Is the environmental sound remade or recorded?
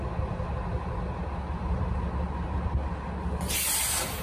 recorded